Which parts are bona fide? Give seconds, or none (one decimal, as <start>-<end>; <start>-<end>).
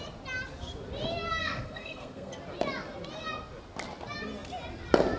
0.0-1.4; 2.3-5.2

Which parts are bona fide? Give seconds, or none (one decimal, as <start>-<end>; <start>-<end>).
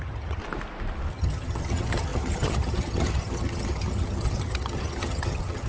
0.4-1.1